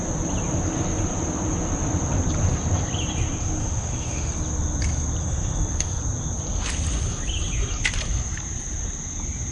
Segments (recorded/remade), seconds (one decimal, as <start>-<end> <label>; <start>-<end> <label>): 0.0-3.6 recorded; 3.6-4.3 remade; 4.3-5.2 recorded; 5.2-6.0 remade; 6.0-9.5 recorded